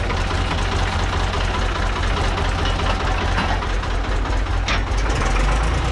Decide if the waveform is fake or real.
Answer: real